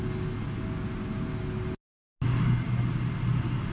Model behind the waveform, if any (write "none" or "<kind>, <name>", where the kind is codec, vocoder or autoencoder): none